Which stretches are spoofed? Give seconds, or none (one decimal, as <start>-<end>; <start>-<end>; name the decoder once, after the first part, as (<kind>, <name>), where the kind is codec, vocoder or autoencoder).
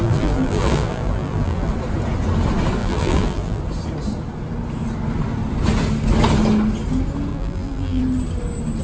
0.0-1.7 (vocoder, BigVGAN v2); 2.8-3.6; 7.3-8.0